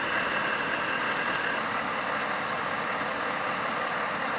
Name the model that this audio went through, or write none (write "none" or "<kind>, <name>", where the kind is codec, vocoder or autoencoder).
vocoder, BigVGAN v2